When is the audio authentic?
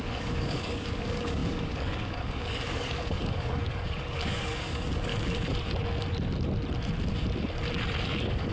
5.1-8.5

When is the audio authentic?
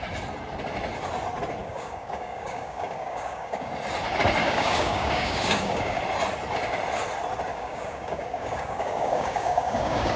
0.0-1.6; 3.7-4.4; 6.0-7.5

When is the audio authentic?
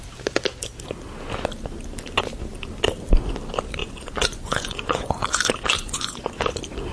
0.0-3.8; 6.5-6.9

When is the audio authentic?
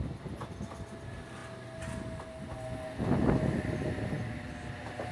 0.0-5.1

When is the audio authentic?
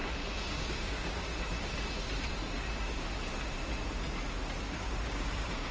0.0-0.5; 1.2-4.6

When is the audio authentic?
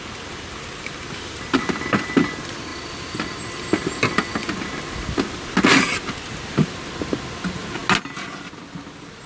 0.0-9.3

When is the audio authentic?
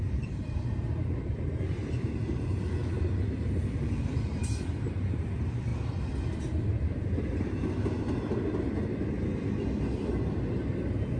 5.7-11.2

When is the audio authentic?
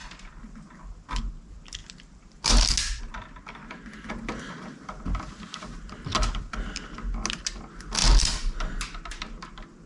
0.0-9.9